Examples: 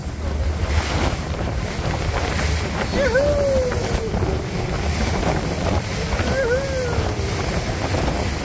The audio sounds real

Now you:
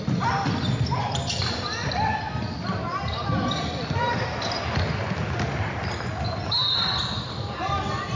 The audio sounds real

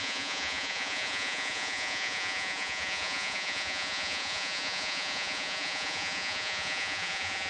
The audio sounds fake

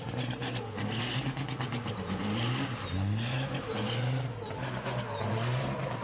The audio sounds real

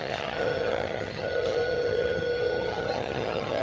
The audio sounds fake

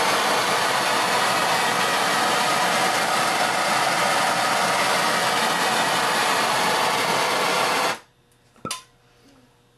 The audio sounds real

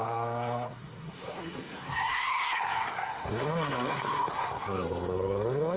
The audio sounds fake